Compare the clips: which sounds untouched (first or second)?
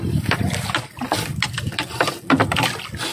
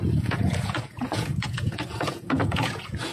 first